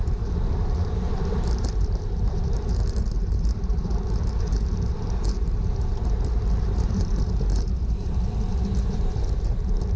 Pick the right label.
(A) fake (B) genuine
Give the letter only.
A